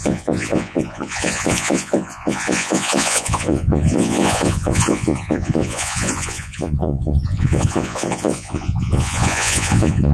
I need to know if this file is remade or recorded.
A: remade